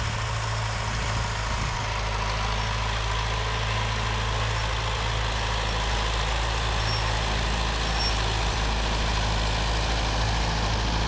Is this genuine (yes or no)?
yes